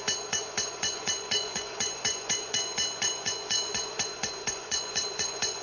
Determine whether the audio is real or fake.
fake